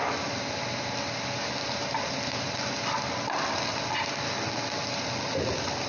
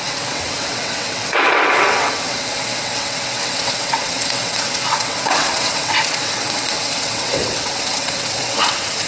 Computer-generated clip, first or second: second